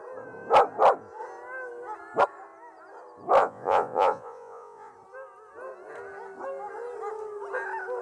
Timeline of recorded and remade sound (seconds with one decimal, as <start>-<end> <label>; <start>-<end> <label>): 0.0-3.4 recorded; 3.4-4.9 remade; 4.9-8.0 recorded